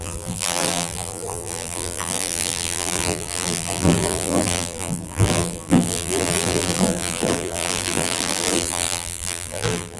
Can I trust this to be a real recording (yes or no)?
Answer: no